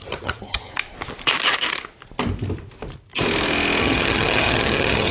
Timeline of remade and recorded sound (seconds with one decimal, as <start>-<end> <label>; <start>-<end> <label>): 0.0-0.7 remade; 0.7-3.8 recorded; 3.8-5.1 remade